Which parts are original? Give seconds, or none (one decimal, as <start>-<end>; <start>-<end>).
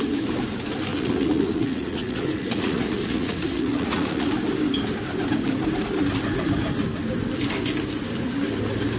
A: 0.0-0.9; 4.3-9.0